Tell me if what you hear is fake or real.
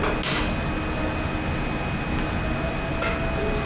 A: real